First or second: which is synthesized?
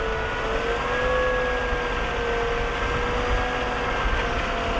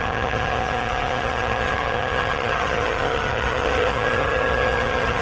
second